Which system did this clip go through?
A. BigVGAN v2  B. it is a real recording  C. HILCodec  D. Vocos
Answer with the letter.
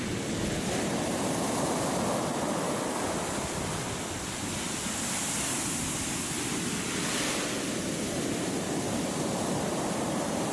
B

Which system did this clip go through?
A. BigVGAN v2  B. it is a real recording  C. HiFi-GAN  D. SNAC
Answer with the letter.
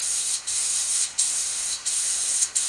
D